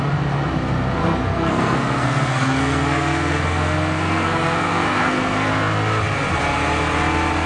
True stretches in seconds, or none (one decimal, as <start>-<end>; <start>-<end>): 0.0-1.0; 5.5-7.5